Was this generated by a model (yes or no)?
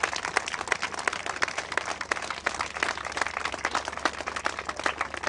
no